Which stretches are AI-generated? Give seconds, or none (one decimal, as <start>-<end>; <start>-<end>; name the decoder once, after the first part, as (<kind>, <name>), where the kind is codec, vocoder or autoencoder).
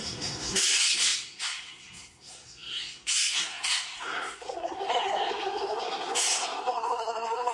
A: 0.0-7.5 (codec, SNAC)